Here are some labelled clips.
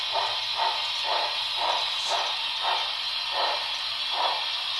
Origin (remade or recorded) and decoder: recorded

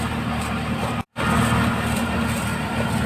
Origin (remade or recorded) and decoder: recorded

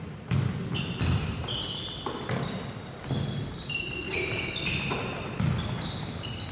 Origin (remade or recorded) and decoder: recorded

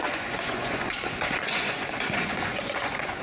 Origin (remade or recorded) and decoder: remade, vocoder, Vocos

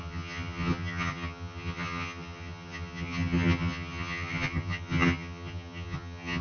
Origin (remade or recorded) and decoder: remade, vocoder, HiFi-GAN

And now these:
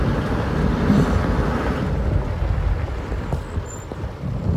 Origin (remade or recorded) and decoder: recorded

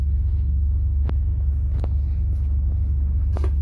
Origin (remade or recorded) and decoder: recorded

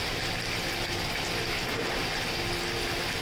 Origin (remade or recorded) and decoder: recorded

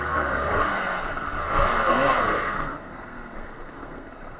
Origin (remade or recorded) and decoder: remade, codec, SNAC